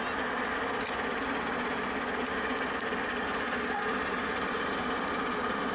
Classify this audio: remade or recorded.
recorded